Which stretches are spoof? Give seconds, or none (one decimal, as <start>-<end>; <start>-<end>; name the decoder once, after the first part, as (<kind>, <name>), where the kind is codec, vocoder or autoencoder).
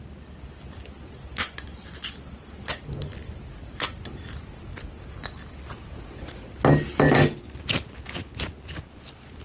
none